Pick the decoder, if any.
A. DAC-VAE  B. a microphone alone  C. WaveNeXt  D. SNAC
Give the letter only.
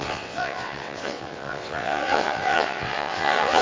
C